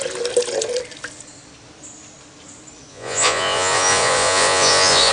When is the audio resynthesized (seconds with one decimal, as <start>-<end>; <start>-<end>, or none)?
2.9-5.1